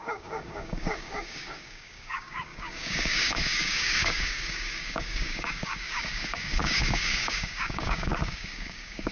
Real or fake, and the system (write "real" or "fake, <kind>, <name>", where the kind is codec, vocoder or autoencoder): fake, codec, DAC